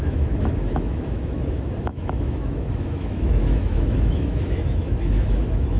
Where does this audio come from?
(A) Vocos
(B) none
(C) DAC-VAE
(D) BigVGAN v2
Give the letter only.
C